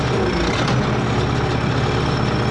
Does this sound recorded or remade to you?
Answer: recorded